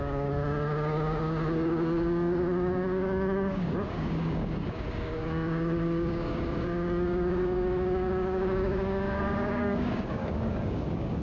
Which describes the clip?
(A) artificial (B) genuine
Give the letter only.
A